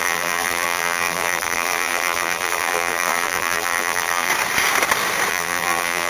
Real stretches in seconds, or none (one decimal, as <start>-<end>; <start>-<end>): 4.3-5.3